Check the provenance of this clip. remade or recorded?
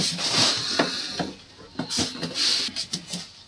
recorded